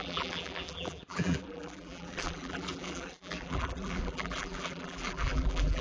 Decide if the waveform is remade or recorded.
remade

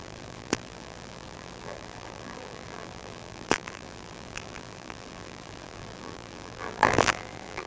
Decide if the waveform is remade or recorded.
remade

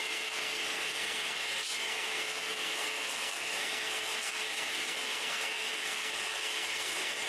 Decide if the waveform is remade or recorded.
remade